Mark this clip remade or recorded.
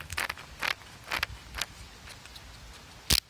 recorded